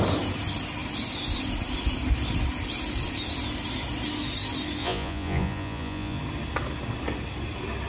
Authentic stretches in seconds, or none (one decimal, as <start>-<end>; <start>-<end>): 0.0-4.8; 6.2-7.9